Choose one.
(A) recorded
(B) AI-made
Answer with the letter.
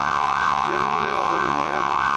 B